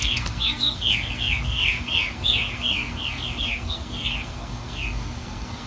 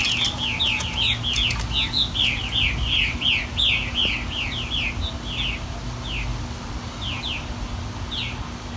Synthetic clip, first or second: first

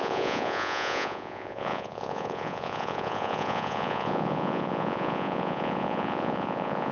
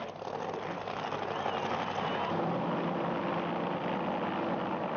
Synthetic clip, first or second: first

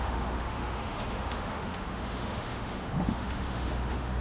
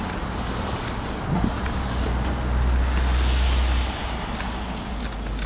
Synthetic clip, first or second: first